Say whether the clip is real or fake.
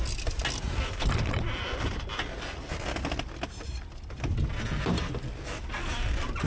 real